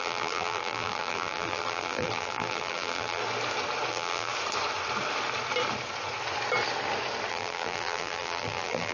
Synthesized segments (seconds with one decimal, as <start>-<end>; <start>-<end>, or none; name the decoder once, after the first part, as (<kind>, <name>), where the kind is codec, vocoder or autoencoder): 0.0-3.2 (vocoder, BigVGAN v2); 3.9-4.3; 7.3-8.9

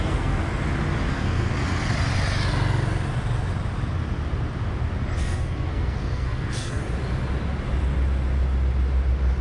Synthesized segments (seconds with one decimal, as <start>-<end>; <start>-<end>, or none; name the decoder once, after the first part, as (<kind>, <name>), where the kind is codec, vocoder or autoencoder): 0.0-0.4 (codec, SNAC); 1.1-1.5; 5.2-6.8